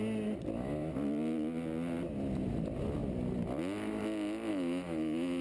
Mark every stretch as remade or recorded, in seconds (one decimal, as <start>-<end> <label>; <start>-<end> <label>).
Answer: 0.0-4.5 recorded; 4.5-5.4 remade